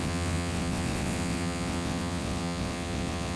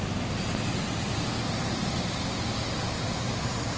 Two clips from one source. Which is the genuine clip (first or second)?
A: second